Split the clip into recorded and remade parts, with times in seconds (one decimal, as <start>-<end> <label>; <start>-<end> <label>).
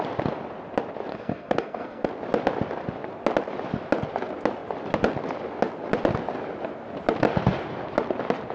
0.0-1.1 recorded; 1.1-2.1 remade; 2.1-8.5 recorded